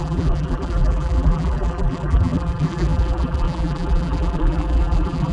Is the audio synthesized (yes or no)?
yes